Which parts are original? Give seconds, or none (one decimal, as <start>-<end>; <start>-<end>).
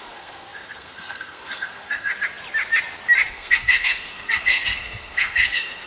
2.1-3.3